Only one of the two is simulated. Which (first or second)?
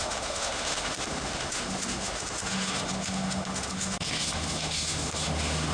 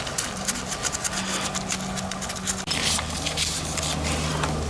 first